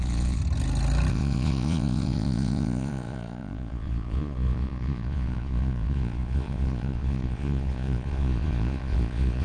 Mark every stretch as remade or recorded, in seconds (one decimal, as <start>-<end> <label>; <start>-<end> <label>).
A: 0.0-0.4 remade; 0.4-1.1 recorded; 1.1-9.4 remade